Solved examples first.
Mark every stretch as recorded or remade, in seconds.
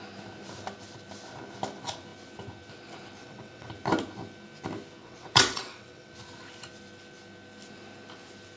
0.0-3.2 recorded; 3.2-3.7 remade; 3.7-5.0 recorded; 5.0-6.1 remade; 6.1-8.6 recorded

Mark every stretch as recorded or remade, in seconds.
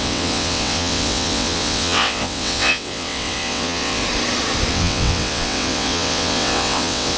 0.0-4.0 remade; 4.0-4.7 recorded; 4.7-7.2 remade